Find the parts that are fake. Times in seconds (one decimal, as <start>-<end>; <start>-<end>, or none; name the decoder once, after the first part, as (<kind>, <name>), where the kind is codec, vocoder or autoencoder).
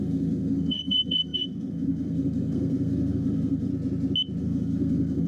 0.0-3.7 (codec, SNAC); 4.4-5.3